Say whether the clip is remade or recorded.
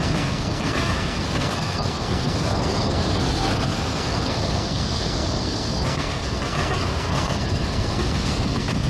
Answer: remade